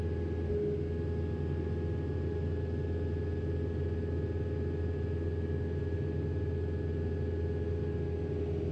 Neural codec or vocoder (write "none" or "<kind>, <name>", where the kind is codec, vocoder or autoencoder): none